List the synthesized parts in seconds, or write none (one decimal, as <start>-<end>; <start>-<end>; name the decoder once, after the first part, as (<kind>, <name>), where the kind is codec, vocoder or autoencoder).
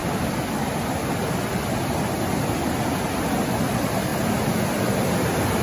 0.0-0.7 (vocoder, BigVGAN v2)